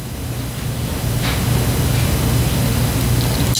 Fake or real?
real